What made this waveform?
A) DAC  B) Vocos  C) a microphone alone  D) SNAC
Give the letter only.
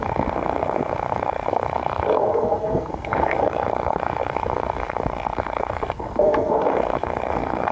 D